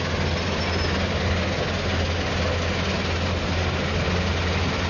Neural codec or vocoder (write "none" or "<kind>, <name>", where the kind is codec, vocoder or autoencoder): none